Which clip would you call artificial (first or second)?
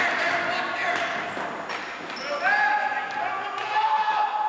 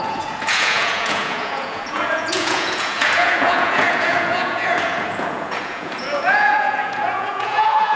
second